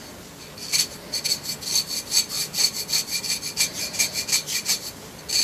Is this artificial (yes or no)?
no